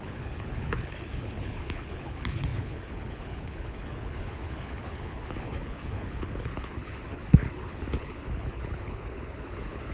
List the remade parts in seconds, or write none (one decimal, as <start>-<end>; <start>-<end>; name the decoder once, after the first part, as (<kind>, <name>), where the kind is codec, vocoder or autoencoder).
0.0-9.9 (codec, HILCodec)